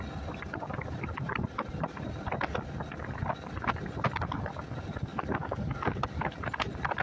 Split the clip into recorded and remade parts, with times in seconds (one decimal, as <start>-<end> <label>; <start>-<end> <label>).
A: 0.0-5.1 recorded; 5.1-6.0 remade; 6.0-7.0 recorded